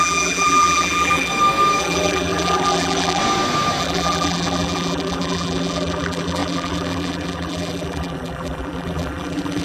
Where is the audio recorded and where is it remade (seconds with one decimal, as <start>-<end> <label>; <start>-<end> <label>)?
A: 0.0-1.3 remade; 1.3-1.8 recorded; 1.8-3.2 remade; 3.2-3.8 recorded; 3.8-9.6 remade